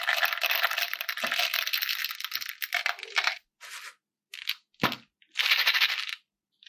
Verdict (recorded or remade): recorded